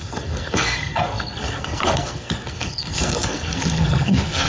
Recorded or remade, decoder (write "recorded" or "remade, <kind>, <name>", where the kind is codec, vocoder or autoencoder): remade, codec, SNAC